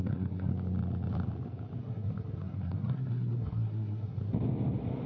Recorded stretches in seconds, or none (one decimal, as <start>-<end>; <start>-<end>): 0.5-1.8; 4.2-5.1